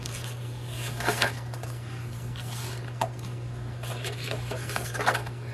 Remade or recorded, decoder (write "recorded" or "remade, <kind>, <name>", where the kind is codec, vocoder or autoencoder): remade, codec, SNAC